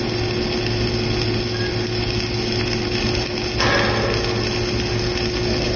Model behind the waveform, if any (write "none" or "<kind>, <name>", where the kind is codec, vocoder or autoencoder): none